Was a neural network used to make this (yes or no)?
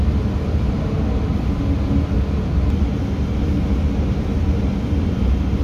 no